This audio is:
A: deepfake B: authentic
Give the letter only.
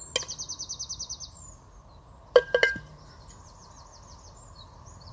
B